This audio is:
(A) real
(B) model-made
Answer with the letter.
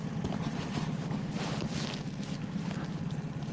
A